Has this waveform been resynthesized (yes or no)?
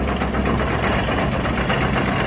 no